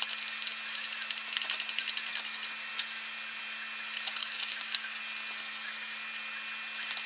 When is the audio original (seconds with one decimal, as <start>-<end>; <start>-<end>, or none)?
0.0-4.2; 5.0-7.1